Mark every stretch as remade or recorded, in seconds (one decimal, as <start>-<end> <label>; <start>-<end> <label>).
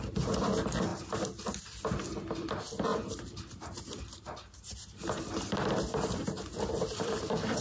0.0-2.9 recorded; 2.9-7.6 remade